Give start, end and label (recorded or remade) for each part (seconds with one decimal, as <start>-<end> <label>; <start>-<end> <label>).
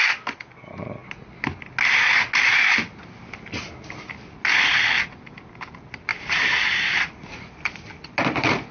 0.0-8.7 recorded